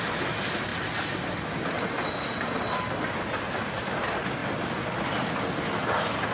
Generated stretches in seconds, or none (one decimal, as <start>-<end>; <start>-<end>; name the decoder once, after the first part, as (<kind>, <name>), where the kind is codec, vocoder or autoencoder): none